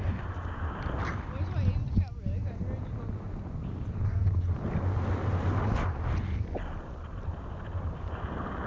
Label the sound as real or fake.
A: real